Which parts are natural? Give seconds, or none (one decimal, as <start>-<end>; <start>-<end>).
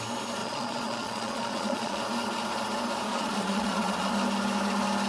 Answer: 0.0-0.4; 2.0-3.1; 4.1-5.1